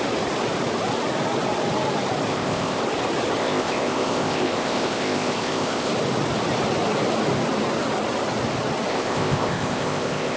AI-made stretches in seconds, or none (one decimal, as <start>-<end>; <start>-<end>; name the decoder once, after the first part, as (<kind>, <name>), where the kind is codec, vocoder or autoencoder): 2.3-2.8 (codec, ZipCodec); 3.4-5.9; 8.9-10.4